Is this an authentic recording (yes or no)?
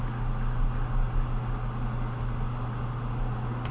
yes